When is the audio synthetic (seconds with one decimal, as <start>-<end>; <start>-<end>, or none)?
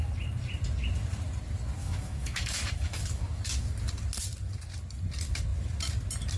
1.8-3.4